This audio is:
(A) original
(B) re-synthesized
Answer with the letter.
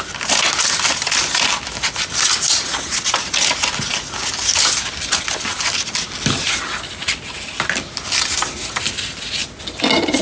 A